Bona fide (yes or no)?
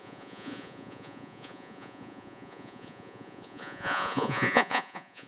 no